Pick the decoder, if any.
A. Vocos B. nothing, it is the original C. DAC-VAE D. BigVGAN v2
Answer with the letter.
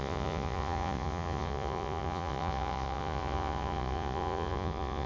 A